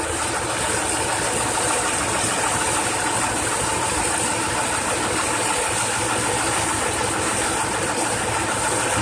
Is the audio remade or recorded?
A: recorded